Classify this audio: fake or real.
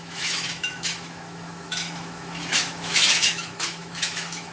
fake